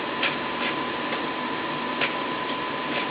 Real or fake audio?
real